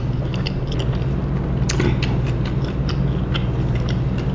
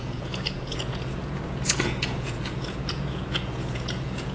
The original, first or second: first